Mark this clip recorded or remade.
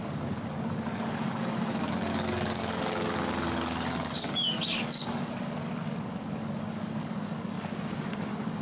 remade